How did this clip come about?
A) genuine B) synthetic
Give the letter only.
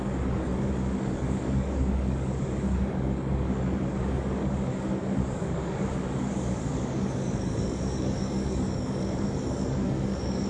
B